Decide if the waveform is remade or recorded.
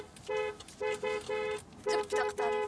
recorded